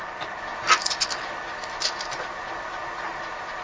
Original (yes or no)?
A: yes